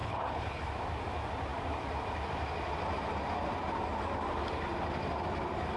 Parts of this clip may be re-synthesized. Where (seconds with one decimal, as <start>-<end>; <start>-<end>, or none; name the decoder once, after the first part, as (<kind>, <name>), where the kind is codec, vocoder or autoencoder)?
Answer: 0.0-0.7 (codec, HILCodec)